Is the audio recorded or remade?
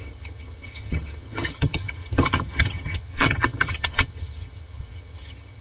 remade